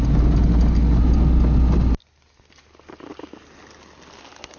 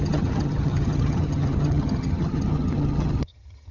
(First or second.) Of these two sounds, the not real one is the second